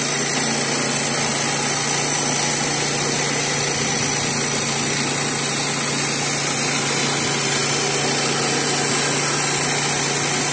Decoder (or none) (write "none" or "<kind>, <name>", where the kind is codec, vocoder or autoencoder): none